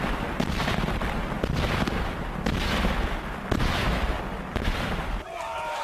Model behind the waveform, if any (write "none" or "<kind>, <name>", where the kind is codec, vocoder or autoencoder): none